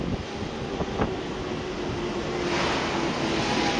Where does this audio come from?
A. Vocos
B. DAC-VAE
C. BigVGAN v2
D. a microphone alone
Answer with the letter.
D